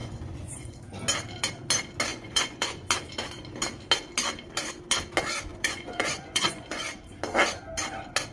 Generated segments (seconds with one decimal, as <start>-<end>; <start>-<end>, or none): 0.0-0.8; 2.1-2.8; 5.5-6.8